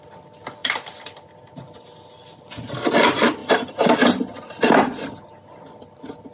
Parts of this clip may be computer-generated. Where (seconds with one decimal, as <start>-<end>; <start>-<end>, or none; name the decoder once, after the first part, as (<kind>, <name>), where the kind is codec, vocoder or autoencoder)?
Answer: 0.6-2.9 (vocoder, BigVGAN v2); 3.4-5.1